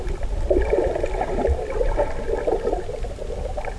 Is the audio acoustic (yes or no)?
yes